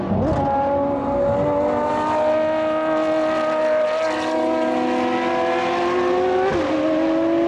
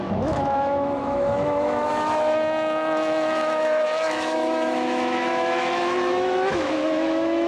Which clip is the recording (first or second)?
first